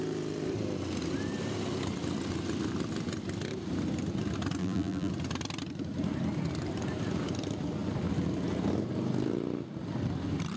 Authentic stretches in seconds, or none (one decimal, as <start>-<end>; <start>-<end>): 0.0-4.6; 5.1-10.6